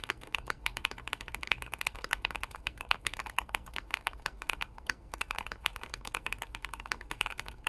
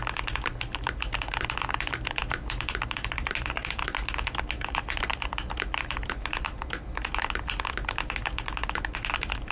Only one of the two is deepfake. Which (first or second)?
first